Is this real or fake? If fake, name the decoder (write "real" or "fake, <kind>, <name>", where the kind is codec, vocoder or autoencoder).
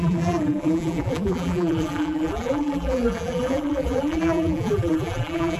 fake, vocoder, BigVGAN v2